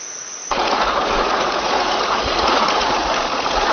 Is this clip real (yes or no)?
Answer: no